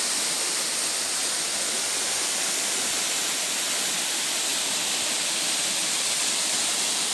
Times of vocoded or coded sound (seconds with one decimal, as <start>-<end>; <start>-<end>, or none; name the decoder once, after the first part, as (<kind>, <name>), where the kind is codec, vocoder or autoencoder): none